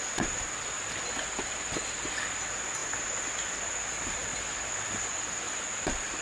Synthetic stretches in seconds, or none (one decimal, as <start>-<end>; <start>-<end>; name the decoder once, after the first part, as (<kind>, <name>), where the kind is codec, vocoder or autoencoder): none